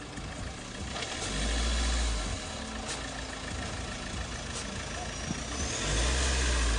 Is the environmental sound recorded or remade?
recorded